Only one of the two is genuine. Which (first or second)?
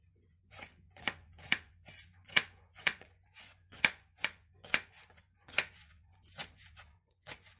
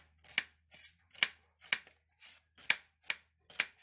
second